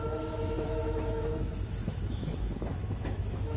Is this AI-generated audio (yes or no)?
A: yes